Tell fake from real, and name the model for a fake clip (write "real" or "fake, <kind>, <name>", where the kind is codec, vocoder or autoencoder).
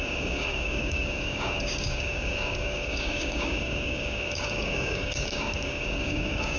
fake, codec, DAC